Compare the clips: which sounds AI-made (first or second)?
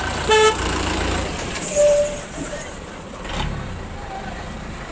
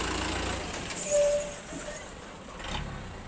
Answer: first